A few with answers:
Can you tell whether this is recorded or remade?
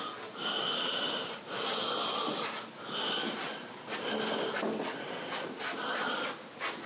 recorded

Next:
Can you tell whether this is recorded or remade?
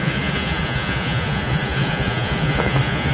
remade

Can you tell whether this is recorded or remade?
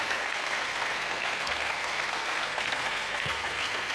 remade